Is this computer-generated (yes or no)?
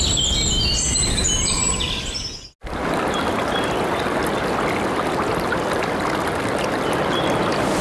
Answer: no